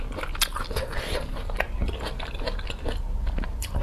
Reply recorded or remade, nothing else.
recorded